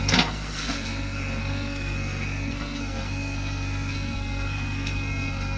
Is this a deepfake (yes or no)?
yes